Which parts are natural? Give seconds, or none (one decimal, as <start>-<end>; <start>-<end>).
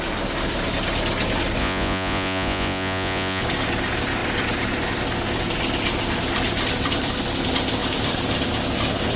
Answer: 0.0-1.6; 3.4-9.2